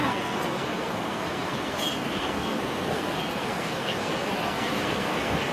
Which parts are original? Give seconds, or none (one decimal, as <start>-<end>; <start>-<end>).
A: none

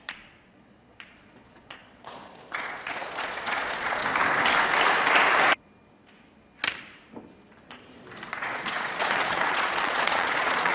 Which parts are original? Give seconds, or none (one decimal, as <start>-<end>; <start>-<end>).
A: 4.0-8.3